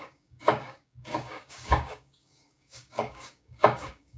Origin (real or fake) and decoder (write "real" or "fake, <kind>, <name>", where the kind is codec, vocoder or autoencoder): fake, codec, DAC